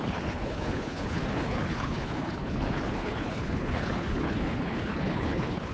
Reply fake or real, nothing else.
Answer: fake